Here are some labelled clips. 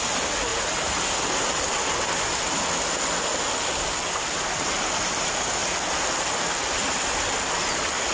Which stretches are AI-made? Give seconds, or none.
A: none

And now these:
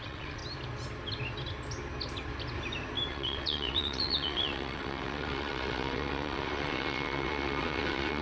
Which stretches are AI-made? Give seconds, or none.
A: 0.0-0.4 (vocoder, WaveNeXt); 3.1-8.2

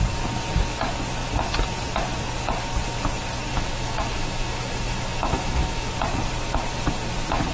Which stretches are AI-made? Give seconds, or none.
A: 3.5-5.9 (autoencoder, DAC-VAE)

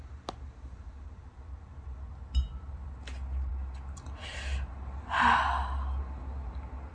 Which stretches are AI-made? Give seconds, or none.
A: none

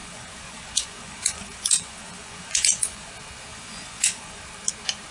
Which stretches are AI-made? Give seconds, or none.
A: 0.0-3.1 (vocoder, Vocos); 3.5-4.4